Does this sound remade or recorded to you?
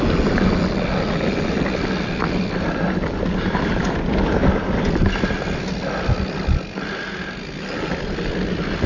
recorded